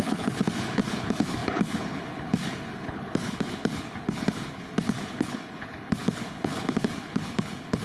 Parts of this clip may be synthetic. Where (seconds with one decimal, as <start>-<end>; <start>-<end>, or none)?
0.0-7.8